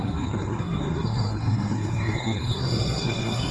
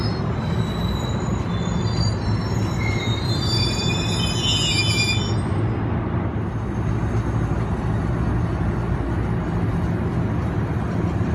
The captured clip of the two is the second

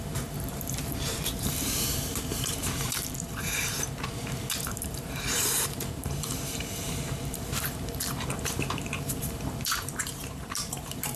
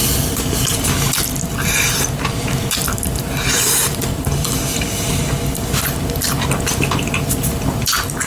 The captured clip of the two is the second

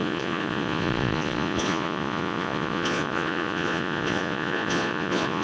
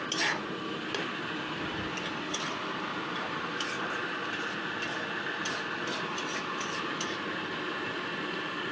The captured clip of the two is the second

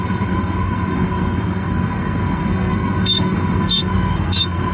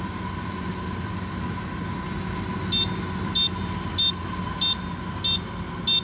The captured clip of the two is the second